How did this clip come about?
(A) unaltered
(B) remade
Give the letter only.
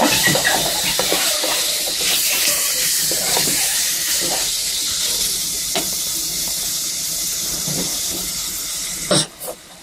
B